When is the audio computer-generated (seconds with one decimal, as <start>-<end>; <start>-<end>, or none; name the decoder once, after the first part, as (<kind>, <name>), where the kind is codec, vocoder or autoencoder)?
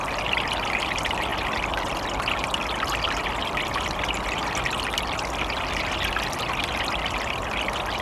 none